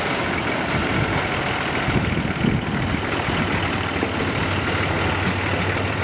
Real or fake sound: real